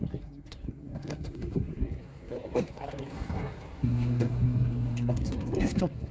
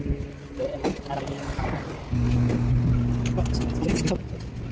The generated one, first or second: first